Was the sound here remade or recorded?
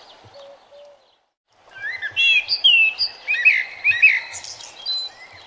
recorded